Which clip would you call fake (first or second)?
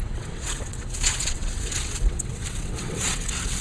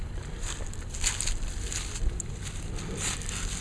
first